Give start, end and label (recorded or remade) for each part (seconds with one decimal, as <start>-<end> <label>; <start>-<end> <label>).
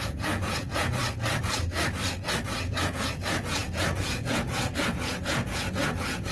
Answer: 0.0-1.0 remade; 1.0-2.7 recorded; 2.7-6.3 remade